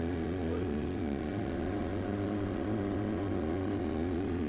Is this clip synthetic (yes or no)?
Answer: yes